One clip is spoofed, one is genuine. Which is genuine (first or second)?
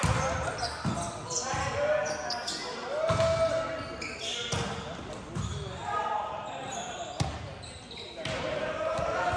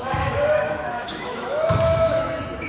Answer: first